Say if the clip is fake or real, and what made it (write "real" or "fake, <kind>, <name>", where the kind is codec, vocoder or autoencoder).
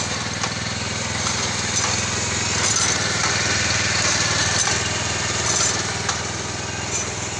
real